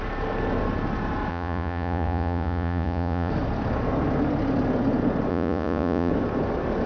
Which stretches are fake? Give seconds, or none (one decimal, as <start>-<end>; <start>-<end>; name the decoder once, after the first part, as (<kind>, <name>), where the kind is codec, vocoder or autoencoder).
1.3-3.3 (vocoder, Vocos); 5.3-6.1